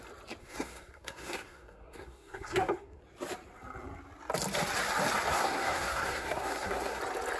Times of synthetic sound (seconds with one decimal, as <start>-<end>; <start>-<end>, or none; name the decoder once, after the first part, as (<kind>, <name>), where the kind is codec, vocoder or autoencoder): 0.4-3.0 (codec, SNAC); 5.3-7.0